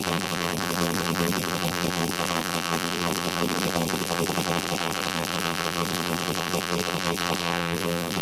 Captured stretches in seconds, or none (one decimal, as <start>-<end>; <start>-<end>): none